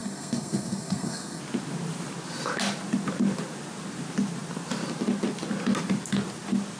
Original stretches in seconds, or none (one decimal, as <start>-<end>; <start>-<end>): 1.4-6.8